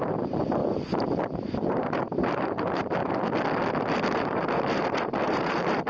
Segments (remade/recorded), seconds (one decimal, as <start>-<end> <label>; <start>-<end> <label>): 0.0-3.0 remade; 3.0-4.1 recorded; 4.1-5.9 remade